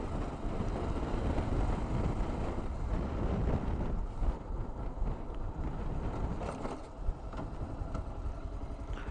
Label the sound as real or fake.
real